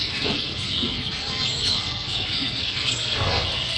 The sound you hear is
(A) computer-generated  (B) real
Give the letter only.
A